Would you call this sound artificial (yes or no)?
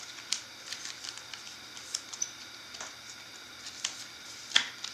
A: no